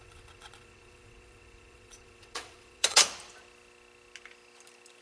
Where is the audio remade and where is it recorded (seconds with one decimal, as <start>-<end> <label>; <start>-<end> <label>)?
0.0-3.0 remade; 3.0-5.0 recorded